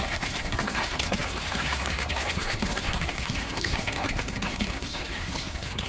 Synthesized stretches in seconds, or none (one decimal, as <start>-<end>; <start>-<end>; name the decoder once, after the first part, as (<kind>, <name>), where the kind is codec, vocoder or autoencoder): 0.0-5.9 (codec, SNAC)

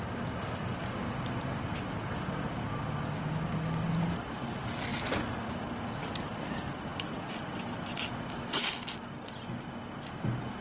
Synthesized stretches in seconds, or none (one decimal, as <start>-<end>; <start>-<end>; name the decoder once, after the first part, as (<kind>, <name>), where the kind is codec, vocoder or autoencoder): none

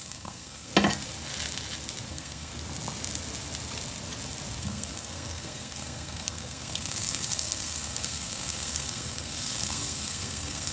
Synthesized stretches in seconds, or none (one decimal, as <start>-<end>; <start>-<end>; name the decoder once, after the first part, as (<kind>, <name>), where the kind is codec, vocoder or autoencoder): 0.0-0.7 (codec, SNAC); 2.1-2.5; 4.6-10.7

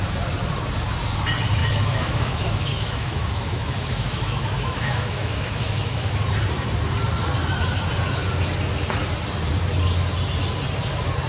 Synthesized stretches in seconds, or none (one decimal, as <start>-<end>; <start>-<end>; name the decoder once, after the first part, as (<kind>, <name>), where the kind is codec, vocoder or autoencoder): 1.6-6.1 (autoencoder, DAC-VAE)